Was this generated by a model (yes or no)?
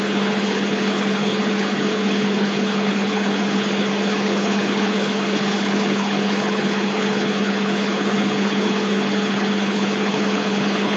yes